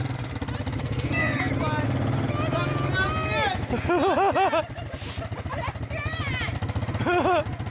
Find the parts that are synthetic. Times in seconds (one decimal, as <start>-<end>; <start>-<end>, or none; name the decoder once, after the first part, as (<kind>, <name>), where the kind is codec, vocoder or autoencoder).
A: 0.8-1.5 (codec, SNAC)